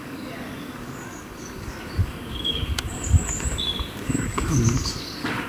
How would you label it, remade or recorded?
remade